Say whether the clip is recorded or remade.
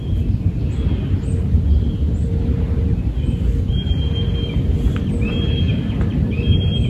recorded